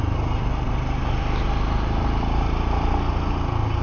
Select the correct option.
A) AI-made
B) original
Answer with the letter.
B